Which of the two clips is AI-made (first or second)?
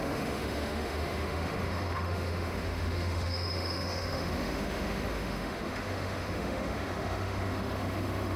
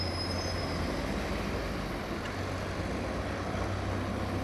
first